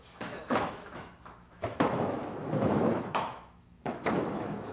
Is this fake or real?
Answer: fake